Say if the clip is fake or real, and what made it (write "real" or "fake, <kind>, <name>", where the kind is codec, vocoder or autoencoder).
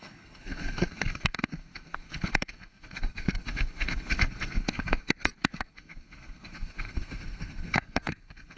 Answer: fake, codec, SNAC